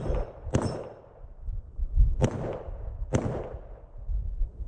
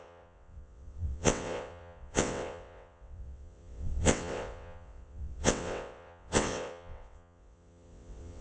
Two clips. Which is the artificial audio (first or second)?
second